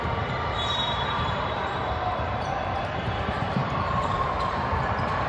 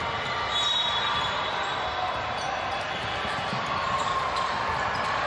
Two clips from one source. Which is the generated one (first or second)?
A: first